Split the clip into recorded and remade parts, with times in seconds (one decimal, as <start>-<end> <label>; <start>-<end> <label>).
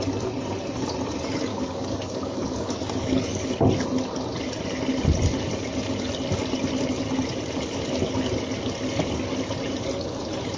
0.0-1.5 recorded; 1.5-3.5 remade; 3.5-10.6 recorded